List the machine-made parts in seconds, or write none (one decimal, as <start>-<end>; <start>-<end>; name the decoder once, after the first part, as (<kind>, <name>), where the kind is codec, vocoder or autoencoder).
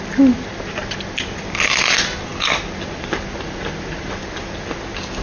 none